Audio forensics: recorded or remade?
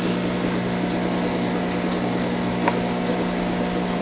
recorded